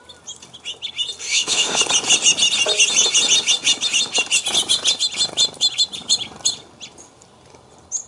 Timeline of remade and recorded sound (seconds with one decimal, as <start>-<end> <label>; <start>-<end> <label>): 0.0-1.3 recorded; 1.3-1.8 remade; 1.8-8.1 recorded